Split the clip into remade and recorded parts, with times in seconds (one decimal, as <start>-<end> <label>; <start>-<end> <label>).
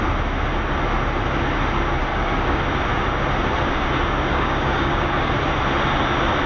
0.0-2.1 recorded; 2.1-2.6 remade; 2.6-4.3 recorded; 4.3-5.3 remade; 5.3-6.5 recorded